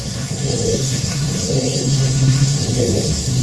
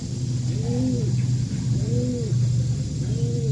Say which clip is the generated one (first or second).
first